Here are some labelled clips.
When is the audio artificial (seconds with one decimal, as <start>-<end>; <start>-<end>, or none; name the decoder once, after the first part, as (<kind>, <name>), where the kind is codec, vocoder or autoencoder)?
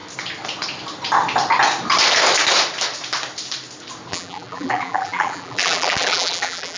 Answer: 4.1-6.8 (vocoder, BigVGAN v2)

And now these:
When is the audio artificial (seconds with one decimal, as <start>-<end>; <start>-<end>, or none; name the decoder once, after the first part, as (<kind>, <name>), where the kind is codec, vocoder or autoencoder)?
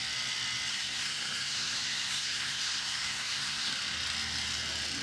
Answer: 0.7-3.7 (codec, SNAC)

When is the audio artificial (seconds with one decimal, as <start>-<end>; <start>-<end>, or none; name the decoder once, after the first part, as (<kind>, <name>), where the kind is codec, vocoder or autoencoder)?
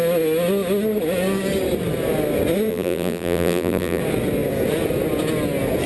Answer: 2.7-4.0 (vocoder, BigVGAN v2)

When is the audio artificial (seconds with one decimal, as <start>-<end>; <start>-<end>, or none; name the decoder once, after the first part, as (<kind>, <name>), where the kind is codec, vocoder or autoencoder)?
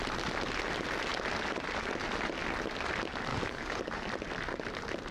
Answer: 3.3-4.1 (codec, DAC)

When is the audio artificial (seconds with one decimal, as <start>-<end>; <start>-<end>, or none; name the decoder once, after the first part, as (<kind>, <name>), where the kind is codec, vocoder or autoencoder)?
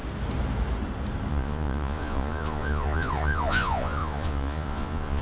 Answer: 1.3-5.2 (vocoder, Vocos)